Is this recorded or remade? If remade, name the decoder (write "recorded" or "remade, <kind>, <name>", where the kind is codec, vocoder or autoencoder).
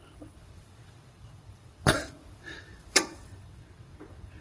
remade, vocoder, WaveNeXt